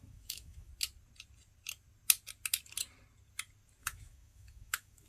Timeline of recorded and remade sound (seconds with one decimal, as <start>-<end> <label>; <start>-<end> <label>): 0.0-0.7 remade; 0.7-3.8 recorded; 3.8-5.1 remade

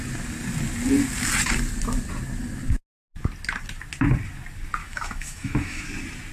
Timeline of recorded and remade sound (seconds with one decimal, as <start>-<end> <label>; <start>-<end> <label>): 0.0-4.8 recorded; 4.8-5.8 remade; 5.8-6.3 recorded

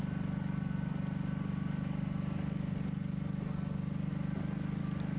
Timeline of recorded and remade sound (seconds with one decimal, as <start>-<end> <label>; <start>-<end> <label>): 0.0-5.2 recorded

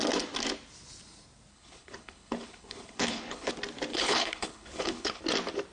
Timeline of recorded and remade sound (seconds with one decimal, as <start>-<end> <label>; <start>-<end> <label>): 0.0-1.5 recorded; 1.5-3.5 remade; 3.5-3.9 recorded; 3.9-5.2 remade; 5.2-5.7 recorded

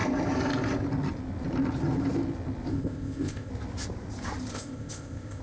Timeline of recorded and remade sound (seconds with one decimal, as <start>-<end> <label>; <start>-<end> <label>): 0.0-2.7 recorded; 2.7-3.5 remade; 3.5-4.5 recorded; 4.5-5.4 remade

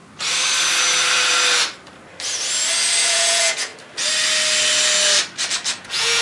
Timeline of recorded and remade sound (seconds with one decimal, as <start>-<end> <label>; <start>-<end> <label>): 0.0-3.0 recorded; 3.0-3.7 remade; 3.7-5.8 recorded; 5.8-6.2 remade

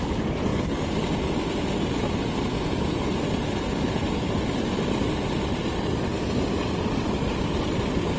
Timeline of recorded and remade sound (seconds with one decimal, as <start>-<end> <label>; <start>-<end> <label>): 0.0-8.2 recorded